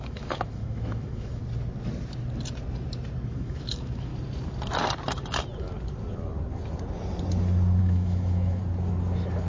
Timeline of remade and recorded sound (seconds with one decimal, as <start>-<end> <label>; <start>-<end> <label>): 0.0-1.4 remade; 1.4-3.3 recorded; 3.3-4.1 remade; 4.1-7.8 recorded; 7.8-8.6 remade; 8.6-9.5 recorded